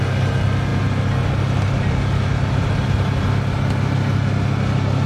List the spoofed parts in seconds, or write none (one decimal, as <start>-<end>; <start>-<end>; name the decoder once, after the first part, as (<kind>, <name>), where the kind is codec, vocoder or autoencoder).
none